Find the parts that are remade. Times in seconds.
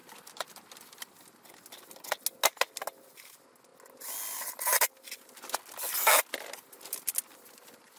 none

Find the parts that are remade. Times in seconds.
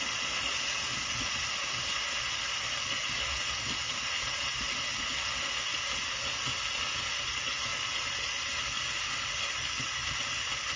none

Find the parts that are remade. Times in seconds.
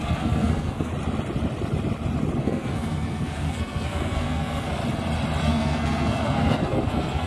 0.0-0.9 (codec, SNAC); 2.4-4.8; 5.4-7.3